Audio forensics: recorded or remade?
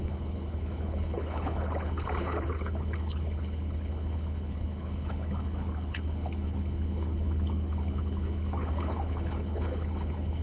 remade